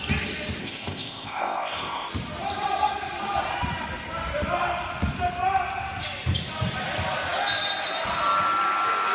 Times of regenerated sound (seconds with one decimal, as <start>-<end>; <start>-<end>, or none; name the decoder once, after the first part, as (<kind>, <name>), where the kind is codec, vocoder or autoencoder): 0.6-2.1 (codec, ZipCodec)